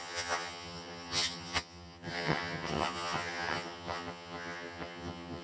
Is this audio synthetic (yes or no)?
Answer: yes